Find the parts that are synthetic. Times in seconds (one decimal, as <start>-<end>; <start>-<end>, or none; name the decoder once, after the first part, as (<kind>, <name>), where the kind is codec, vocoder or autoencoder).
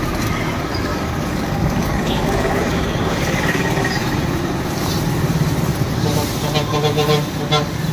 0.9-3.8 (codec, DAC)